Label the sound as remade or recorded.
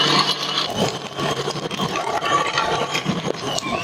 remade